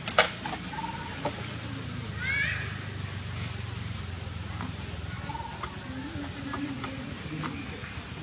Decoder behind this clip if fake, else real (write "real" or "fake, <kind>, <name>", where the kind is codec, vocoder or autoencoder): real